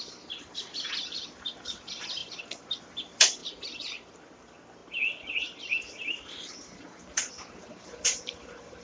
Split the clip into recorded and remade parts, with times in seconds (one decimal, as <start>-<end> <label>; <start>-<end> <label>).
0.0-2.2 remade; 2.2-2.8 recorded; 2.8-8.8 remade